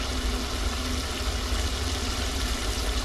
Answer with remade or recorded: recorded